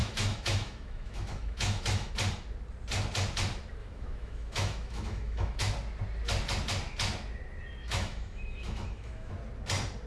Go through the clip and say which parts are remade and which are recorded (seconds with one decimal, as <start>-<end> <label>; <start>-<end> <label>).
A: 0.0-2.1 remade; 2.1-3.8 recorded; 3.8-5.6 remade; 5.6-7.8 recorded; 7.8-9.3 remade; 9.3-10.1 recorded

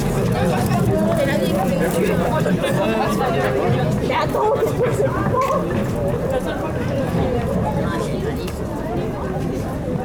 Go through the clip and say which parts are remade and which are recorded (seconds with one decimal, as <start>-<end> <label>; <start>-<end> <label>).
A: 0.0-10.0 recorded